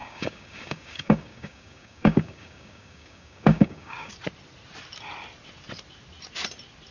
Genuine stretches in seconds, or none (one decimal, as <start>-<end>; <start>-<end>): 4.1-6.9